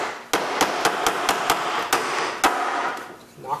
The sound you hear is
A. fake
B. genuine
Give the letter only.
B